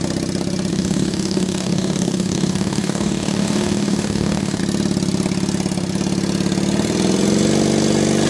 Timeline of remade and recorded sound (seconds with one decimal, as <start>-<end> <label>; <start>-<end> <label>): 0.0-0.7 recorded; 0.7-4.6 remade; 4.6-8.3 recorded